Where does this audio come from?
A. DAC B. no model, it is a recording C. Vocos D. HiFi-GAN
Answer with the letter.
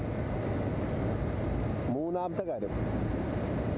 B